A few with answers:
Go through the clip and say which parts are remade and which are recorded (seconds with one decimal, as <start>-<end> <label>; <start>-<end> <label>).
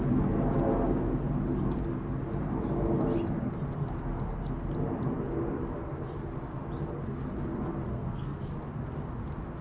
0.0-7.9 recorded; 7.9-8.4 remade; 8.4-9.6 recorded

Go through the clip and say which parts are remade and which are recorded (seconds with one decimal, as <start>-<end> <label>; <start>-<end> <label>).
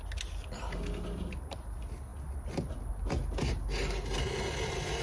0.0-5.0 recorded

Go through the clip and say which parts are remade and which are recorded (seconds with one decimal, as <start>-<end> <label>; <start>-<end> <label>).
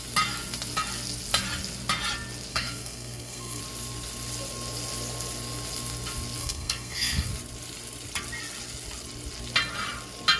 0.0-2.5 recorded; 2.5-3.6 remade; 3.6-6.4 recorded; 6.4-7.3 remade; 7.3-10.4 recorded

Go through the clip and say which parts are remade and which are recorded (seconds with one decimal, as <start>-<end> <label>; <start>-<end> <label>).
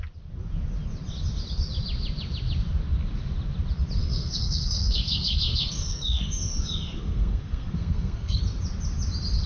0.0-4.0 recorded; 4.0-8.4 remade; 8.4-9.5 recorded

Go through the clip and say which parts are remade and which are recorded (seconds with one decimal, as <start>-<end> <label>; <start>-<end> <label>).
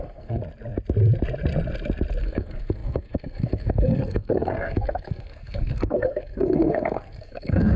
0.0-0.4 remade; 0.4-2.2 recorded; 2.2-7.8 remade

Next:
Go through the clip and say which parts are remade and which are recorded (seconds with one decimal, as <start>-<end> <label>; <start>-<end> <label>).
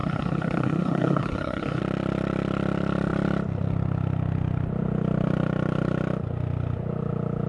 0.0-1.8 remade; 1.8-7.5 recorded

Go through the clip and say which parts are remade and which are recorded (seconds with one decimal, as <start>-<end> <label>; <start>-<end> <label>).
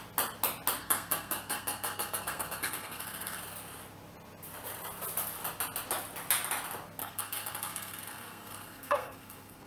0.0-0.8 recorded; 0.8-3.4 remade; 3.4-7.0 recorded; 7.0-9.7 remade